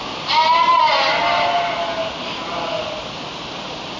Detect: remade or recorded recorded